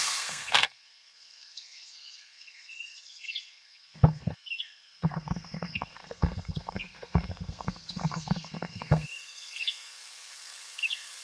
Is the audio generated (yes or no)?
yes